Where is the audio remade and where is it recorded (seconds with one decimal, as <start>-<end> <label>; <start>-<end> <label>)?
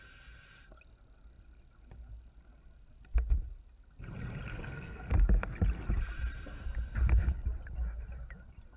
0.0-4.5 recorded; 4.5-5.1 remade; 5.1-8.8 recorded